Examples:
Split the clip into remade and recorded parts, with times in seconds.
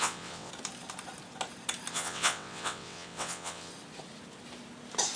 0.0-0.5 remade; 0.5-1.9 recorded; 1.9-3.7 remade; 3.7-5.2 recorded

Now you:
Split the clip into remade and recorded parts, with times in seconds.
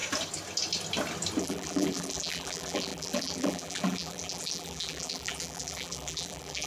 0.0-1.4 recorded; 1.4-6.7 remade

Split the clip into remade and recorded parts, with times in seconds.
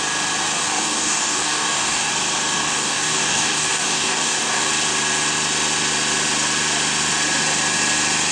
0.0-0.6 recorded; 0.6-2.1 remade; 2.1-2.6 recorded; 2.6-4.7 remade; 4.7-8.3 recorded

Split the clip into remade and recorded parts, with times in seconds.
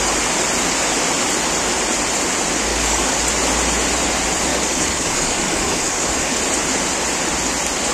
0.0-2.7 recorded; 2.7-3.2 remade; 3.2-4.5 recorded; 4.5-6.4 remade; 6.4-7.9 recorded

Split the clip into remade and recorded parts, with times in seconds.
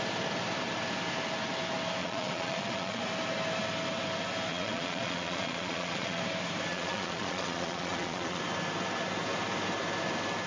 0.0-2.0 recorded; 2.0-3.0 remade; 3.0-4.5 recorded; 4.5-6.2 remade; 6.2-6.7 recorded; 6.7-8.4 remade; 8.4-10.5 recorded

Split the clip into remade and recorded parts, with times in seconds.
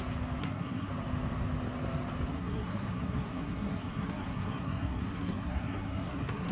0.0-0.4 recorded; 0.4-0.9 remade; 0.9-2.3 recorded; 2.3-6.5 remade